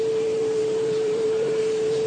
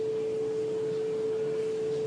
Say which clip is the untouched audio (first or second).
second